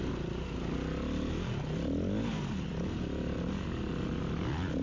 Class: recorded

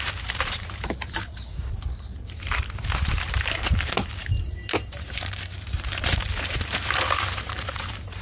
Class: remade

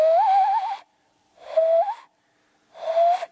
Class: recorded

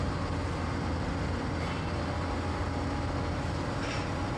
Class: recorded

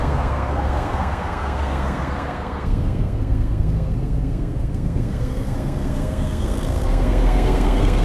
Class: remade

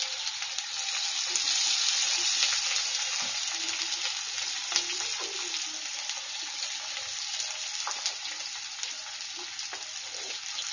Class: recorded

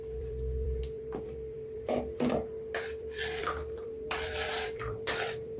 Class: remade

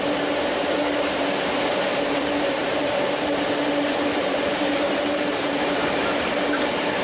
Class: remade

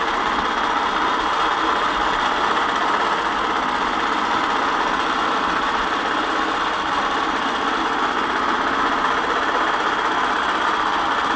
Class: recorded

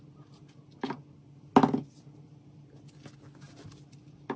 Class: recorded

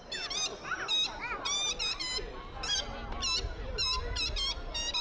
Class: recorded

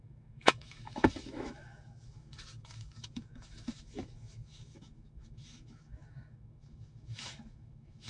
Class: remade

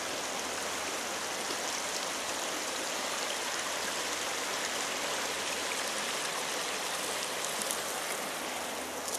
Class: recorded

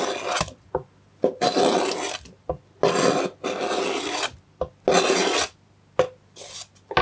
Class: recorded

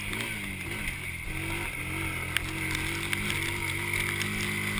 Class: recorded